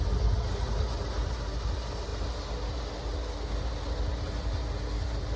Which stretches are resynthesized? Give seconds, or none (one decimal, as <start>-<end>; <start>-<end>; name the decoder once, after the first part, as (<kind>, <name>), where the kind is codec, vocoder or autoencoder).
none